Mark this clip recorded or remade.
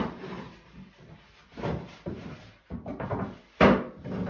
remade